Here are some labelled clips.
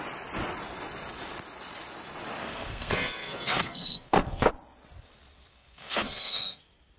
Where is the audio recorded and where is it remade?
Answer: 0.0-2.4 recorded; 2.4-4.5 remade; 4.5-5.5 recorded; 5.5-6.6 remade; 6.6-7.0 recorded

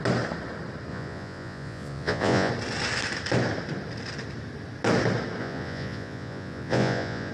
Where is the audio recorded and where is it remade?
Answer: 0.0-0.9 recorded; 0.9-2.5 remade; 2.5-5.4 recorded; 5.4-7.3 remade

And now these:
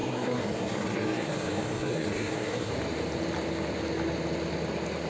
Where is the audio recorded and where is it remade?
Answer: 0.0-2.7 remade; 2.7-5.1 recorded